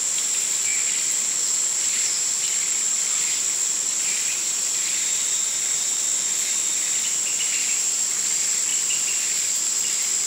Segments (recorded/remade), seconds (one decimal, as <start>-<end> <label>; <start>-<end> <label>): 0.0-10.3 recorded